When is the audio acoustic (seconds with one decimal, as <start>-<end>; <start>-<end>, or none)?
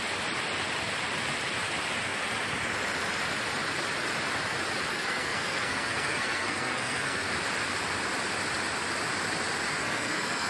0.0-4.9; 7.3-9.8